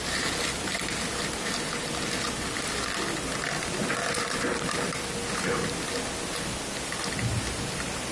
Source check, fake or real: real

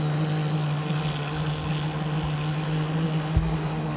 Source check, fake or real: real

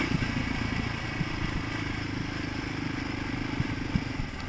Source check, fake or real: real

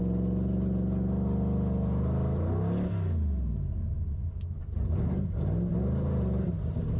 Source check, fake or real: real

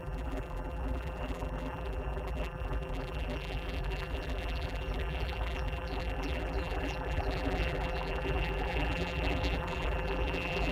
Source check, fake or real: fake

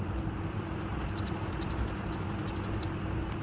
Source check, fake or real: real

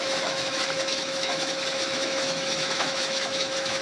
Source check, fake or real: fake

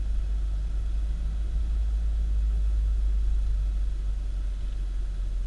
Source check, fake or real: real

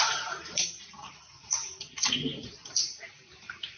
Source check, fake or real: fake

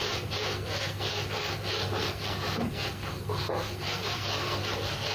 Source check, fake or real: fake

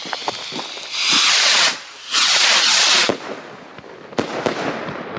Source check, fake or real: real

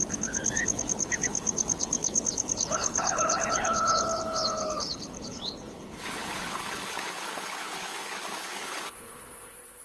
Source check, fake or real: fake